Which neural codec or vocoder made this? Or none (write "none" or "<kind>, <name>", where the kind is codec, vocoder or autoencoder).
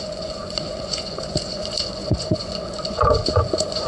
vocoder, Vocos